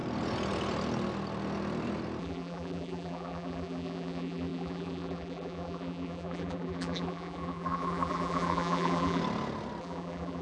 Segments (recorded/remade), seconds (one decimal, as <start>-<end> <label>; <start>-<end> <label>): 0.0-2.2 recorded; 2.2-9.2 remade; 9.2-9.8 recorded; 9.8-10.4 remade